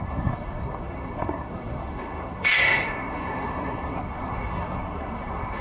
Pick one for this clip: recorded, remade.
remade